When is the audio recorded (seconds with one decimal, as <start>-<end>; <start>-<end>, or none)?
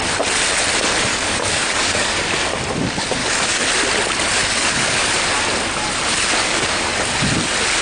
0.0-1.1; 2.3-3.2; 3.7-4.4; 5.1-6.4; 7.0-7.8